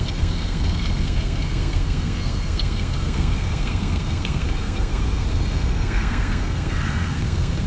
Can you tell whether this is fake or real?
fake